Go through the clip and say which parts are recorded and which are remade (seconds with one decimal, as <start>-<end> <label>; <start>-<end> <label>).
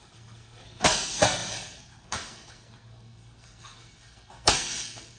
0.0-5.2 remade